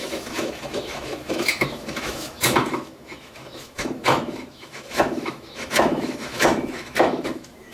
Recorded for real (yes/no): no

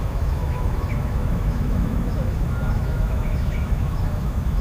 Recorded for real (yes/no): no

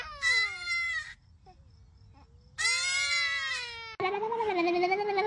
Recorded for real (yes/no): yes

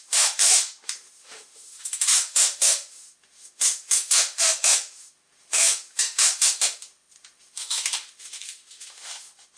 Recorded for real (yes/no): no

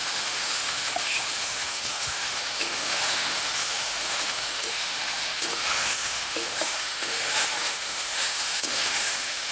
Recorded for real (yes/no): no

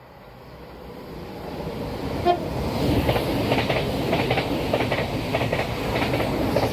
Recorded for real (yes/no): yes